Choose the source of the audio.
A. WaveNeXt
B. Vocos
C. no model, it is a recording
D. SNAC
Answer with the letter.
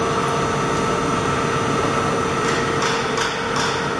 C